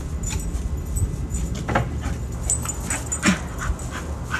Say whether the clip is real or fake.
real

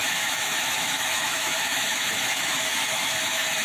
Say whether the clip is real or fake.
fake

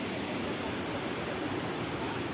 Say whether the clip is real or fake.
real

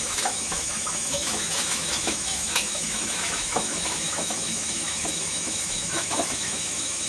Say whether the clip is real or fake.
fake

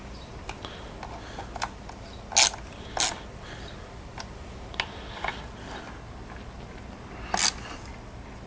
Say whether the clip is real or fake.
real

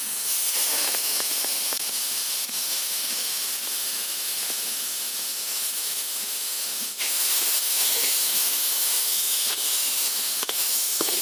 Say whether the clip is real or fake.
fake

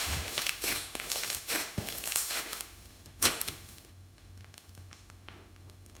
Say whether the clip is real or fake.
fake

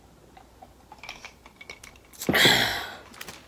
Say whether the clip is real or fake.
real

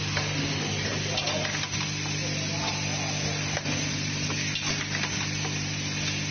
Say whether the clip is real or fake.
real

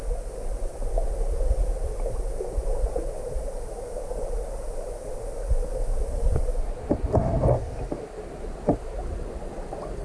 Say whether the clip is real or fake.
real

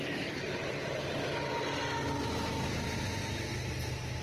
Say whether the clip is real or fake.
real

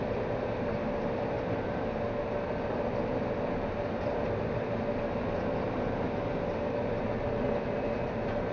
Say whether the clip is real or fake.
real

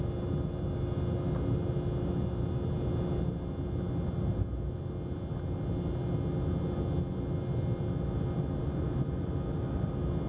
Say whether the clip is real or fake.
real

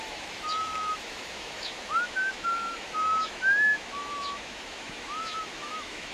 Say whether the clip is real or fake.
fake